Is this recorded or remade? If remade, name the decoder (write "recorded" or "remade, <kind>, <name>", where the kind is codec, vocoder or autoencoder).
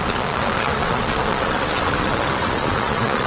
remade, vocoder, Vocos